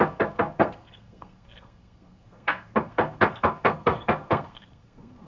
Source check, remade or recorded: remade